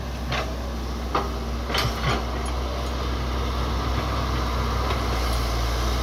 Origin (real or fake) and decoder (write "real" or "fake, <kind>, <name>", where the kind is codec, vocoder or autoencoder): real